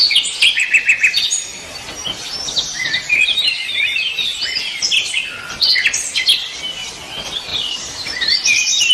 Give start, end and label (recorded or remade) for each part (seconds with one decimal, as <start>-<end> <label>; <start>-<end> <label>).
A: 0.0-1.5 recorded; 1.5-5.1 remade; 5.1-7.5 recorded; 7.5-8.9 remade